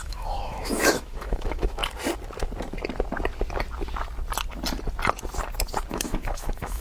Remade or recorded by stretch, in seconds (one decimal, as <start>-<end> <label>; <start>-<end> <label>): 0.0-1.8 remade; 1.8-5.9 recorded; 5.9-6.8 remade